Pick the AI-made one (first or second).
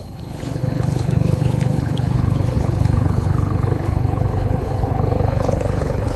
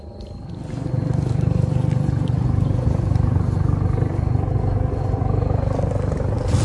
first